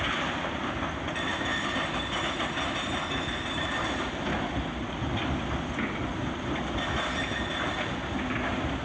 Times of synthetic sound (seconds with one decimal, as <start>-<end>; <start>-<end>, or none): none